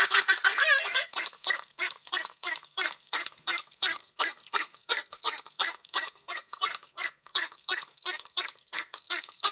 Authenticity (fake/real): fake